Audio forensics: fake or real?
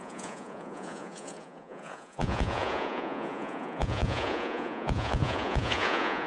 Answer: fake